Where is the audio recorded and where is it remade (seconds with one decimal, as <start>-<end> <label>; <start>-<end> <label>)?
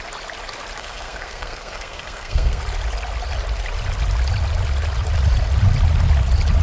0.0-0.8 recorded; 0.8-2.6 remade; 2.6-6.6 recorded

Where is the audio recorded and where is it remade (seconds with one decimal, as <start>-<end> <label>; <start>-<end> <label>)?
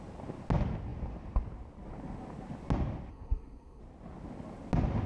0.0-3.1 recorded; 3.1-3.8 remade; 3.8-5.1 recorded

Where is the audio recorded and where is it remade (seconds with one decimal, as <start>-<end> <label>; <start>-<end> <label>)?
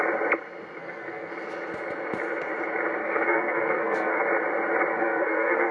0.0-0.8 recorded; 0.8-1.3 remade; 1.3-3.0 recorded; 3.0-4.2 remade; 4.2-4.9 recorded; 4.9-5.7 remade